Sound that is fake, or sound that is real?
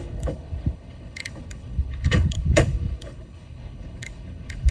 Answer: fake